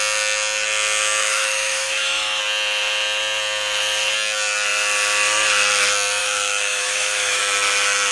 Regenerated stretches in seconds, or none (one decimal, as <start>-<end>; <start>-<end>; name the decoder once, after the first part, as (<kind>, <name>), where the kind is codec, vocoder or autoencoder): 1.2-2.4 (autoencoder, DAC-VAE); 6.2-7.4